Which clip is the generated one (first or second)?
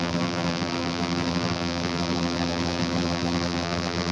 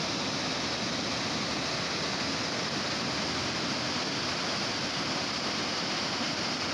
first